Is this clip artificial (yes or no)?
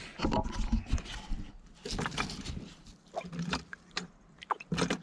no